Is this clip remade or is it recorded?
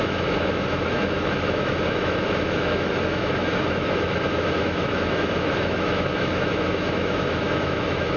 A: remade